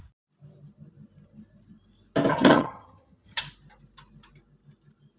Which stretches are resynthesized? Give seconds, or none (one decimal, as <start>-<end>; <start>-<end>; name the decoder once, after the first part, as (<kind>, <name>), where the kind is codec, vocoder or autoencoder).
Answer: 2.3-3.4 (vocoder, HiFi-GAN)